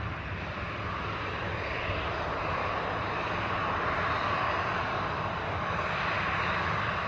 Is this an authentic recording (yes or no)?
yes